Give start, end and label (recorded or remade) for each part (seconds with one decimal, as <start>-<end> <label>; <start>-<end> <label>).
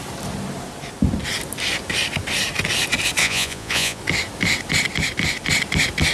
0.0-3.2 recorded; 3.2-4.0 remade; 4.0-6.1 recorded